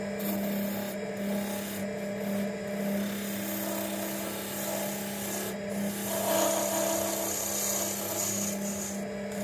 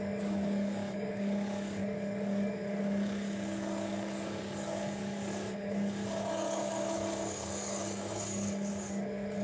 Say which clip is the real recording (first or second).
first